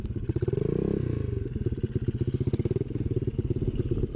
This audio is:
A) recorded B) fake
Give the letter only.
A